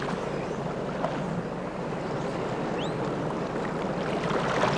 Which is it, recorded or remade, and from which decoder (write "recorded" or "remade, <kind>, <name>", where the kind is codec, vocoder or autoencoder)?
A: recorded